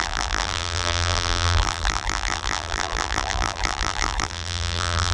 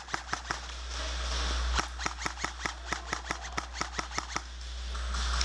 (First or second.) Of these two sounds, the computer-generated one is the first